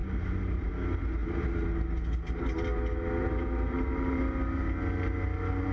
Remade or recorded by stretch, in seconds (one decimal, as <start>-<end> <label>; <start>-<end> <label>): 0.0-0.7 remade; 0.7-3.2 recorded; 3.2-4.2 remade; 4.2-5.7 recorded